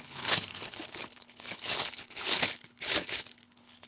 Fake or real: fake